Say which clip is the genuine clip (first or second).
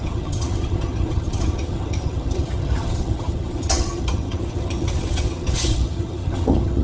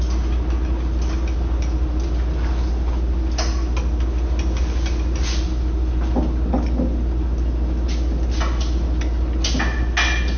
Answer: second